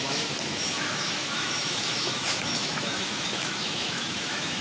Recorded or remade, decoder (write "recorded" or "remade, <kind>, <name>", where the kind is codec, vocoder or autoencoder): remade, autoencoder, DAC-VAE